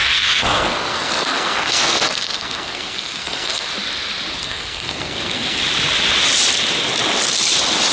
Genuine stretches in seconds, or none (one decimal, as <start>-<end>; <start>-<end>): 3.7-4.4; 5.6-7.9